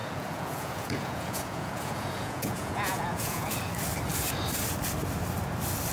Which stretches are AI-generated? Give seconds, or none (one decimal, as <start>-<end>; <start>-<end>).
0.0-3.5